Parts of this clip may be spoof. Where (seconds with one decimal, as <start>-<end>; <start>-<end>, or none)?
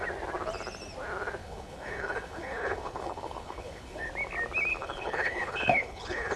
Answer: 1.4-4.1; 4.7-6.4